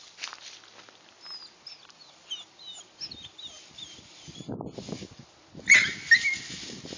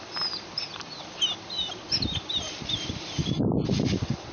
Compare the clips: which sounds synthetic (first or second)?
second